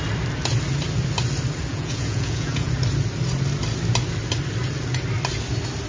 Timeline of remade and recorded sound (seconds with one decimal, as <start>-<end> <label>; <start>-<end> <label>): 0.0-1.7 recorded; 1.7-2.7 remade; 2.7-5.9 recorded